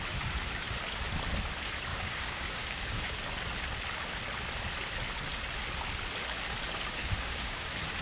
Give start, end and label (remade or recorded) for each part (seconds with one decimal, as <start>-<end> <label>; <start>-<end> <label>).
0.0-1.9 recorded; 1.9-3.2 remade; 3.2-7.0 recorded; 7.0-7.6 remade; 7.6-8.0 recorded